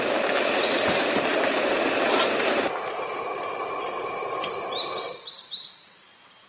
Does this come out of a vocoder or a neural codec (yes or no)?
yes